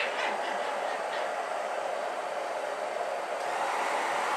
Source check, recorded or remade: remade